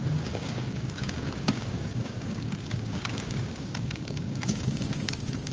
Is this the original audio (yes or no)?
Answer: no